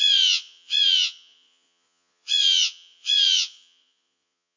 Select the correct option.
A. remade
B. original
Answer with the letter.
A